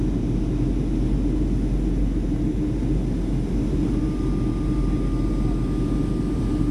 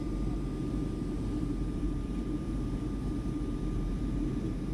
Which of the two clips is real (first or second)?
first